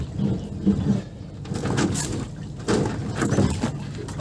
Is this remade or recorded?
recorded